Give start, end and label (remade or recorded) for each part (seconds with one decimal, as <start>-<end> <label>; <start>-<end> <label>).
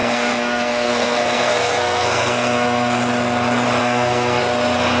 0.0-3.0 remade; 3.0-3.8 recorded; 3.8-4.4 remade; 4.4-5.0 recorded